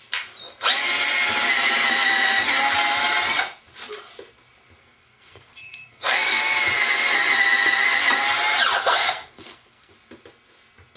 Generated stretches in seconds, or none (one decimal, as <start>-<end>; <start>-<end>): 4.8-6.4; 8.8-9.9